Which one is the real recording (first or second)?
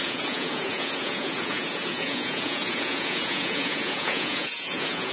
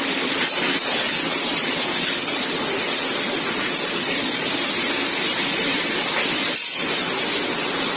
second